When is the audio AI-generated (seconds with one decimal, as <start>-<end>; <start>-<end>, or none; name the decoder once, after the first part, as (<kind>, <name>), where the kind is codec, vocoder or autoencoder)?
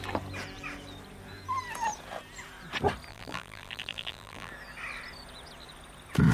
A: 3.1-4.5 (vocoder, BigVGAN v2)